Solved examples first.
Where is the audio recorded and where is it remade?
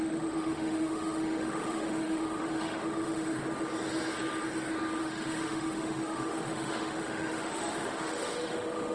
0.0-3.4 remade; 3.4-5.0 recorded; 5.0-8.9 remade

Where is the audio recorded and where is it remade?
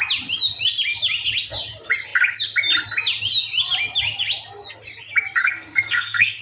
0.0-5.4 recorded; 5.4-6.4 remade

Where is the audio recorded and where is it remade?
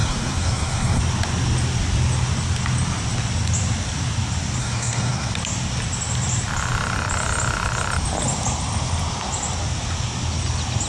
0.0-1.0 remade; 1.0-4.6 recorded; 4.6-5.3 remade; 5.3-10.9 recorded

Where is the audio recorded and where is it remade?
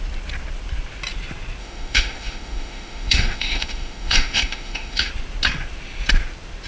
0.0-1.6 recorded; 1.6-5.1 remade; 5.1-6.7 recorded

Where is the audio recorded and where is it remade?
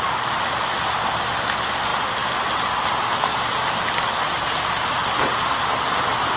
0.0-6.4 recorded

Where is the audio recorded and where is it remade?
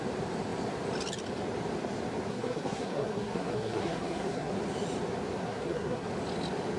0.0-2.3 recorded; 2.3-4.5 remade; 4.5-5.4 recorded; 5.4-6.1 remade; 6.1-6.8 recorded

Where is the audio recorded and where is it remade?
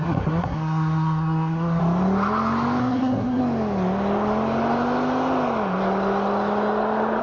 0.0-1.8 remade; 1.8-2.8 recorded; 2.8-3.4 remade; 3.4-7.2 recorded